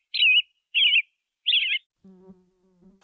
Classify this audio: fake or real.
real